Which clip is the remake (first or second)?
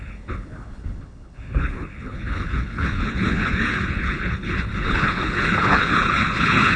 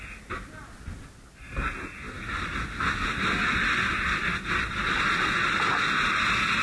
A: first